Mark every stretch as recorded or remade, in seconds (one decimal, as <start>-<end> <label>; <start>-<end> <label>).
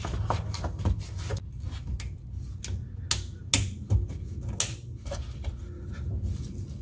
0.0-6.8 recorded